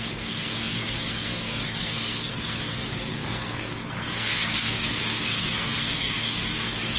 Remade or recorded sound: remade